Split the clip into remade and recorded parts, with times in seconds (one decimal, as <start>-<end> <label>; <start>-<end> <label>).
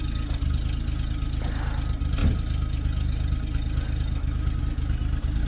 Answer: 0.0-5.5 recorded